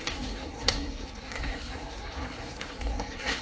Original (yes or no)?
no